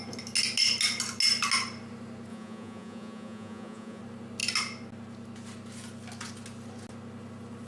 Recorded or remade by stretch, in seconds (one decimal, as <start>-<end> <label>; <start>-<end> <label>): 0.0-2.3 recorded; 2.3-4.0 remade; 4.0-7.7 recorded